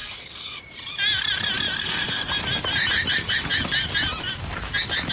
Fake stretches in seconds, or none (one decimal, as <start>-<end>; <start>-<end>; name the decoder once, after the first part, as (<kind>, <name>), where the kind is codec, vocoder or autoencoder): 0.0-0.6 (codec, SNAC); 1.8-2.3